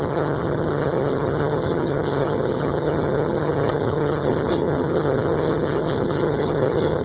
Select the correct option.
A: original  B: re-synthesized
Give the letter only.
B